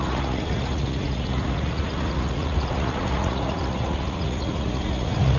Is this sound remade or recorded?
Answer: remade